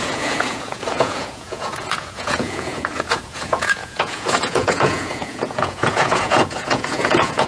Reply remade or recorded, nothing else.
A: remade